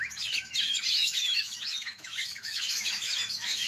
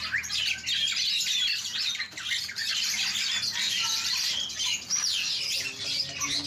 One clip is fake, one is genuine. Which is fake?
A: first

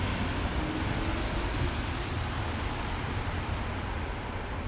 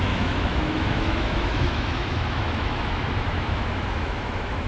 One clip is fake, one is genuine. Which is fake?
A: second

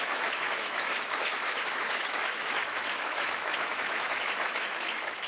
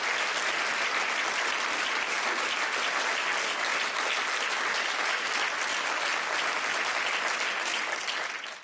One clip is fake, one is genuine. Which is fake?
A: first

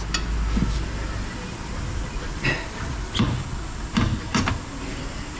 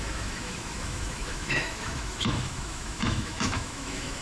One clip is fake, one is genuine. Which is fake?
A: second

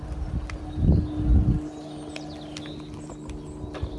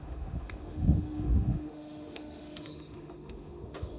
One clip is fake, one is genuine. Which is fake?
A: second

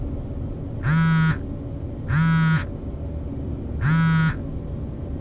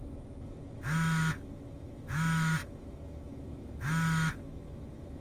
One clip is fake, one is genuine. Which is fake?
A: second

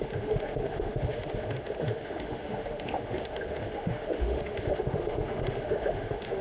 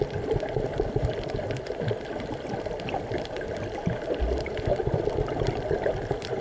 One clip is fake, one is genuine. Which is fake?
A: first